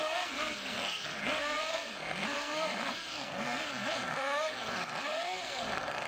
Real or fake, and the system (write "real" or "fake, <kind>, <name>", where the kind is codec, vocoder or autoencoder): fake, codec, SNAC